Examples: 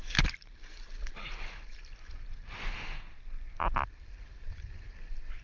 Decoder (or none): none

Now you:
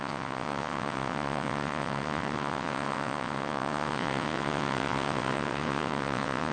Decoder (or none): vocoder, WaveNeXt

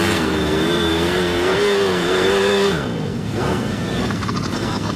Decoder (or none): codec, SNAC